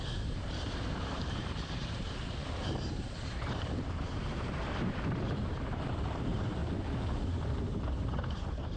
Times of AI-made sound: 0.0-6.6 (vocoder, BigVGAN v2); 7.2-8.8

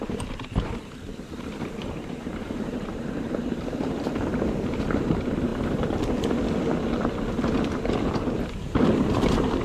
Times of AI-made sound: 0.0-5.5 (vocoder, BigVGAN v2); 9.0-9.6

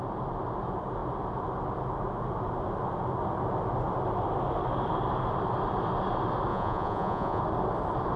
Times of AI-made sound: 6.5-7.4 (vocoder, Vocos)

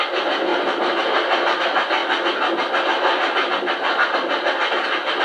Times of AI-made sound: 0.5-1.6 (vocoder, BigVGAN v2)